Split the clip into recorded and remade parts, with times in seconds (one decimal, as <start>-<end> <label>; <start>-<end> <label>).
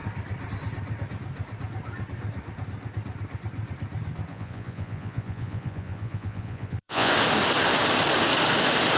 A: 0.0-4.3 recorded; 4.3-7.1 remade; 7.1-9.0 recorded